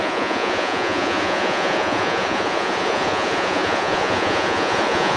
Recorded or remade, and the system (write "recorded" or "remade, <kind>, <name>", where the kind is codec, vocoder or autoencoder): remade, vocoder, Vocos